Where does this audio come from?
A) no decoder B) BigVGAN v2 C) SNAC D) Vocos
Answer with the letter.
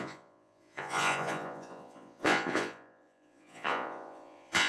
D